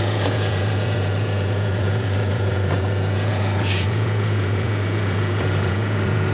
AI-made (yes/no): yes